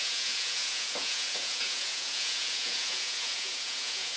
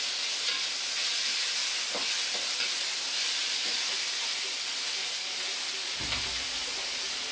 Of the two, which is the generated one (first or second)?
first